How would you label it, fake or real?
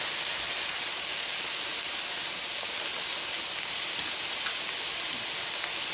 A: real